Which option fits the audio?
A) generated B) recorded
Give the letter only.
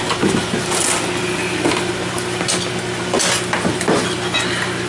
B